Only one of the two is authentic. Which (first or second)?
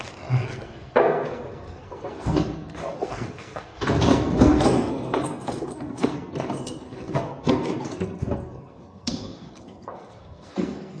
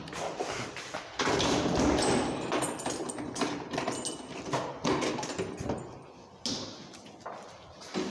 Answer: second